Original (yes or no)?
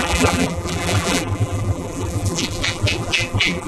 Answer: no